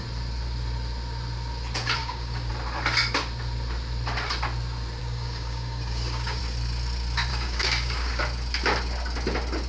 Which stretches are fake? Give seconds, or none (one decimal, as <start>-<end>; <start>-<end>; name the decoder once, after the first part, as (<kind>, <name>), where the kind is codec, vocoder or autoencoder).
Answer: 2.0-2.5 (codec, DAC); 5.0-6.4; 7.3-8.2